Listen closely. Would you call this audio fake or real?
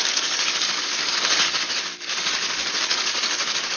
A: fake